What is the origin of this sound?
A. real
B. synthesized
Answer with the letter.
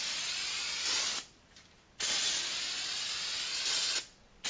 A